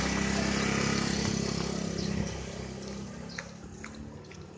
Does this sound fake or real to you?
real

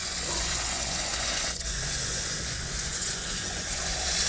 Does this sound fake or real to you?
fake